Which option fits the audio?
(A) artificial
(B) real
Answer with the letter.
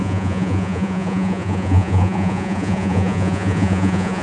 A